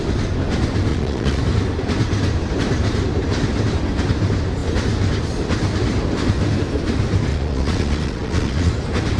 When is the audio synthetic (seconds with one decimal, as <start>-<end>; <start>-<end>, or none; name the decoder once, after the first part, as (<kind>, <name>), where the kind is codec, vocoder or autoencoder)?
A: 0.9-1.4 (vocoder, Vocos); 7.3-8.7